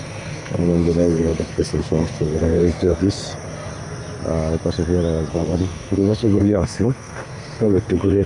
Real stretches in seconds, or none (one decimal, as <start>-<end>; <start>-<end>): 3.2-5.3